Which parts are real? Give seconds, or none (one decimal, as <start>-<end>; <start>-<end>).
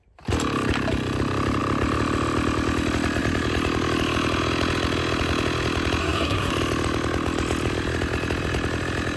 0.0-6.0; 6.5-9.2